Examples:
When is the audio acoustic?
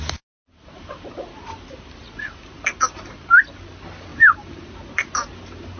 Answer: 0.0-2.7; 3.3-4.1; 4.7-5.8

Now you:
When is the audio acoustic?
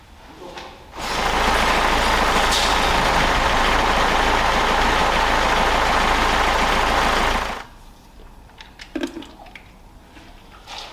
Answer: 0.0-10.9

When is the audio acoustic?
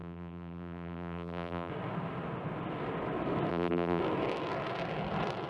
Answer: 1.7-3.5; 4.0-5.5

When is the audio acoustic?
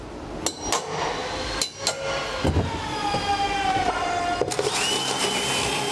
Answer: 0.0-5.9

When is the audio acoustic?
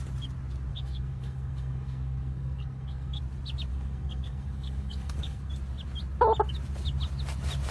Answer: 0.0-0.7; 3.2-3.7; 5.5-7.7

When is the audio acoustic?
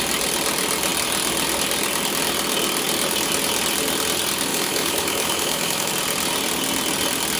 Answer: 0.0-4.5; 5.9-7.4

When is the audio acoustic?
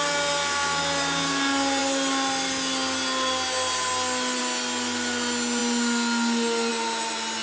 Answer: 0.0-7.4